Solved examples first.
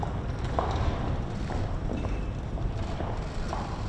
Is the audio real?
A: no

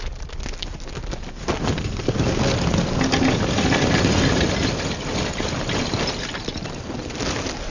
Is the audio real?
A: yes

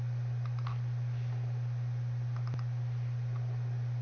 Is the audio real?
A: yes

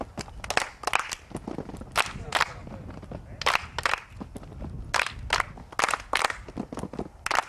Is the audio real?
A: yes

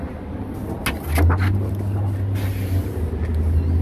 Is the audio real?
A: yes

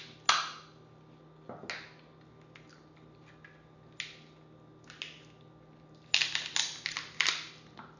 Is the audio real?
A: yes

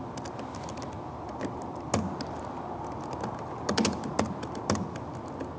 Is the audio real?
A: yes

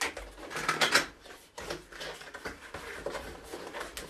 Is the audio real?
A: yes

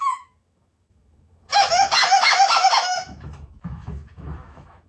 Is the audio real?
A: no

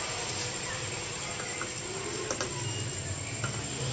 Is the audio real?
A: yes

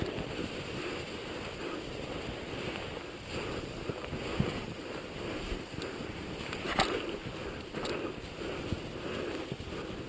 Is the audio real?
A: yes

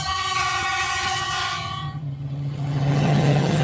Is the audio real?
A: no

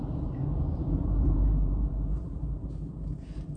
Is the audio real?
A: no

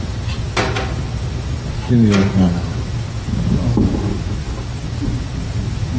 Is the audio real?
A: yes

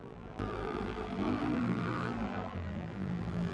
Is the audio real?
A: no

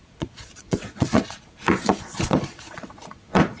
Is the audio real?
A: no